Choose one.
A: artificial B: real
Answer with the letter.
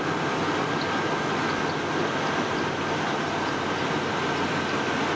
B